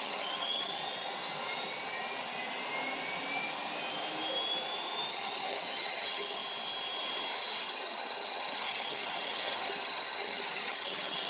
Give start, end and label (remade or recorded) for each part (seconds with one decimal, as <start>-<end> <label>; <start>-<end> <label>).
0.0-0.8 remade; 0.8-5.1 recorded; 5.1-6.4 remade; 6.4-7.6 recorded; 7.6-11.3 remade